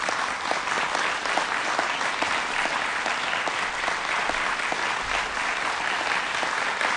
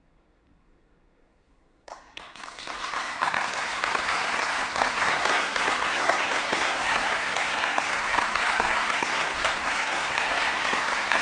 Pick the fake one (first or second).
second